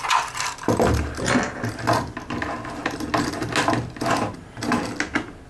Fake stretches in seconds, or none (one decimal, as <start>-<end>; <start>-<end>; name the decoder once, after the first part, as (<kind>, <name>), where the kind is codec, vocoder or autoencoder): none